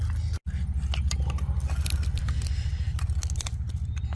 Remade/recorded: recorded